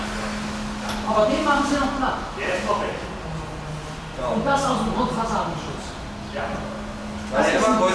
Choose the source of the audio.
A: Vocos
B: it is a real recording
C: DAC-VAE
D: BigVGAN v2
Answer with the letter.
B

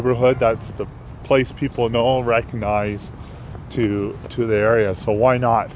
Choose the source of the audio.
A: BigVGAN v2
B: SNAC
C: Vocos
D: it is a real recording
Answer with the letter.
D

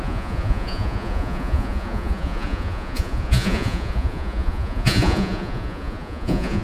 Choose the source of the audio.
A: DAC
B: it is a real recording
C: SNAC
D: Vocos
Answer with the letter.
D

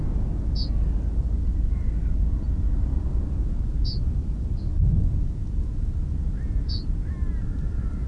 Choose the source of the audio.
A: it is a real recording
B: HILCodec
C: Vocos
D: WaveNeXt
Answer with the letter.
A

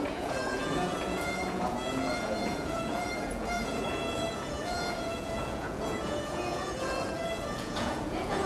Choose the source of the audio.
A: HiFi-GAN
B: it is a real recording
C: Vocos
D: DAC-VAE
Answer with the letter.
C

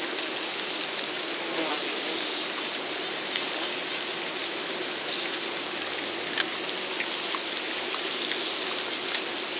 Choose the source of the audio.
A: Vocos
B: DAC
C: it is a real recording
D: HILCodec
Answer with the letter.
C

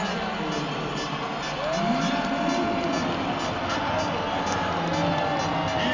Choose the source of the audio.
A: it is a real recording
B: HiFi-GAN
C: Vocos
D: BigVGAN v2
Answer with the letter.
A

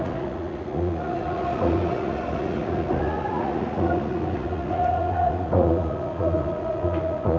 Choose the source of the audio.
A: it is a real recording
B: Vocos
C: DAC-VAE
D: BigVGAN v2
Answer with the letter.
B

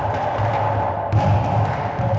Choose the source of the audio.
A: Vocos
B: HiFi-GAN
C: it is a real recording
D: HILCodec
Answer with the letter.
C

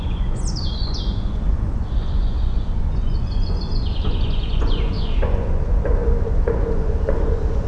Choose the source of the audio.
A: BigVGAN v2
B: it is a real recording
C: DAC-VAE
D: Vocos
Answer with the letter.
D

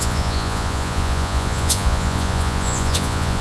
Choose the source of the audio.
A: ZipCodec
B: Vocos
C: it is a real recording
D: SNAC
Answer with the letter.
B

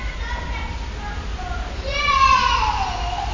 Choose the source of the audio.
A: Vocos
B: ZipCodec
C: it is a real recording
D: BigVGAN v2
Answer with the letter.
C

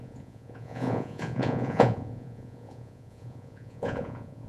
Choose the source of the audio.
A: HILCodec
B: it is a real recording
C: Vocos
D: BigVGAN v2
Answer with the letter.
C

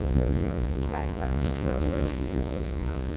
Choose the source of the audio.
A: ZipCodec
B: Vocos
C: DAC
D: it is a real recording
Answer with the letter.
B